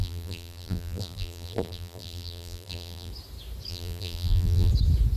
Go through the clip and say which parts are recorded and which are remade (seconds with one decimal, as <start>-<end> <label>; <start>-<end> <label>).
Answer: 0.0-3.1 remade; 3.1-3.7 recorded; 3.7-4.7 remade; 4.7-5.2 recorded